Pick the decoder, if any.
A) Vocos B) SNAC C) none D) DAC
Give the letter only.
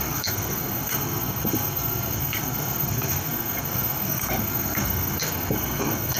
B